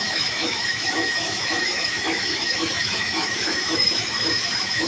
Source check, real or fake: fake